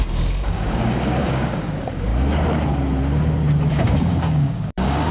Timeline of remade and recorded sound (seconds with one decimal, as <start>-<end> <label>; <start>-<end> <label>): 0.0-2.1 remade; 2.1-3.7 recorded; 3.7-5.1 remade